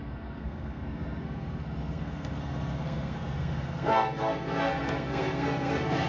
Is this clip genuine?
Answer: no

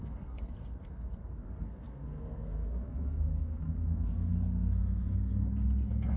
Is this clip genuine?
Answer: no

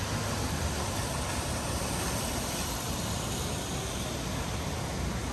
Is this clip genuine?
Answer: yes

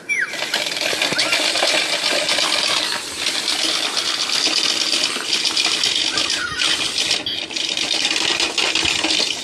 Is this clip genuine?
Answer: yes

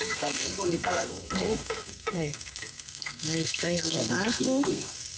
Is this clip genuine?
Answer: no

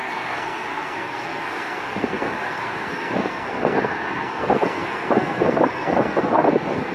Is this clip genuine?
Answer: no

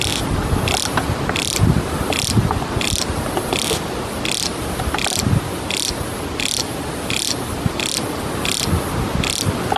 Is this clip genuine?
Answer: yes